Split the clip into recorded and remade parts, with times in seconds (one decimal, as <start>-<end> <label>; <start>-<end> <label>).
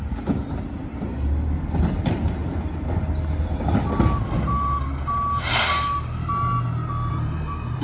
0.0-1.1 remade; 1.1-2.0 recorded; 2.0-2.4 remade; 2.4-7.1 recorded; 7.1-7.8 remade